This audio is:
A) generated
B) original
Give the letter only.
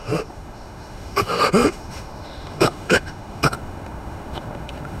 A